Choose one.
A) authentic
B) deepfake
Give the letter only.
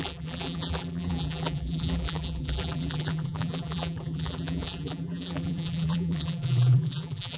B